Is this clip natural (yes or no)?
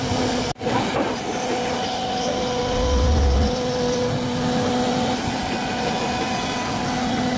yes